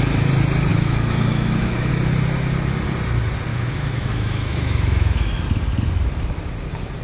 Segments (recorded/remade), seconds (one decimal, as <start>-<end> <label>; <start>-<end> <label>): 0.0-0.7 recorded; 0.7-1.9 remade; 1.9-3.5 recorded; 3.5-5.4 remade; 5.4-7.0 recorded